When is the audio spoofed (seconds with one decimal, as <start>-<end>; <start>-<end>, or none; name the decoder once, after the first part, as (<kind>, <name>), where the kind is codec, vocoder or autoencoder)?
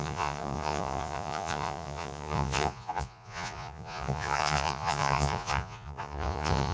0.0-6.7 (vocoder, Vocos)